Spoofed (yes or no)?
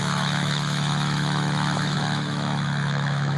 yes